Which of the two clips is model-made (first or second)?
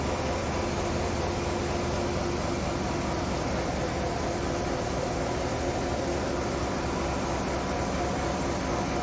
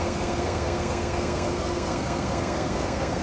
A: second